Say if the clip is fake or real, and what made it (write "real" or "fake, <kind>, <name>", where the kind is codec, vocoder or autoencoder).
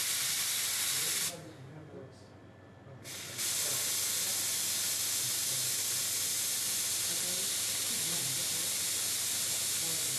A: real